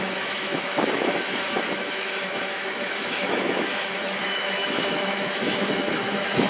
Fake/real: fake